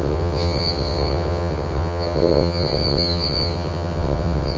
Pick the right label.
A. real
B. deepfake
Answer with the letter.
B